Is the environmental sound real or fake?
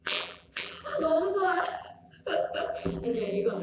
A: fake